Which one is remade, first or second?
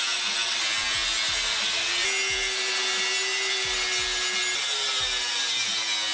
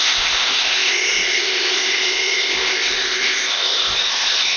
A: second